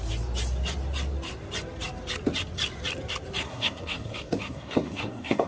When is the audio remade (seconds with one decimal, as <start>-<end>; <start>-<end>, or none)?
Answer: 3.4-5.5